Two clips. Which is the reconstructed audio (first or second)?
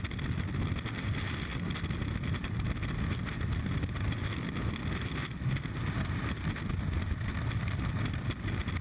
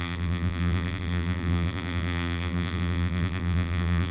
second